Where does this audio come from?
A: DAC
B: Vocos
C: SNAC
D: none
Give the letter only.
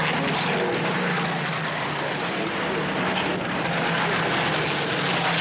D